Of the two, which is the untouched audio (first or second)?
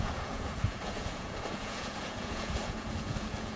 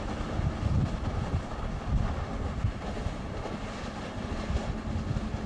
second